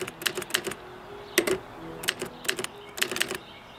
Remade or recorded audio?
recorded